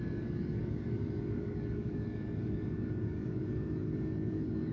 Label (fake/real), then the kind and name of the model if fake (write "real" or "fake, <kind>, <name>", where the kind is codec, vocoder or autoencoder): fake, codec, DAC